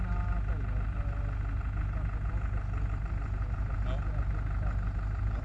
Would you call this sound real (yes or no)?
yes